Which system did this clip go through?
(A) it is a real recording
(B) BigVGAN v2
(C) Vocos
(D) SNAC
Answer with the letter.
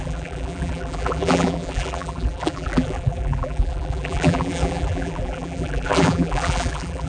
B